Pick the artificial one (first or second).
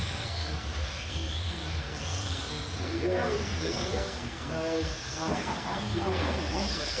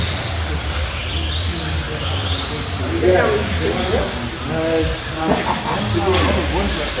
first